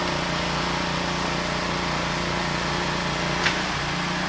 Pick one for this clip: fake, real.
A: real